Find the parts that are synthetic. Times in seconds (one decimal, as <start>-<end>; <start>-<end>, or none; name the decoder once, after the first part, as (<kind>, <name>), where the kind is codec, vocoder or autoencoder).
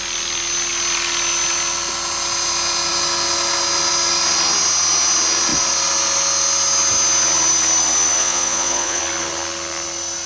8.2-9.0 (vocoder, Vocos)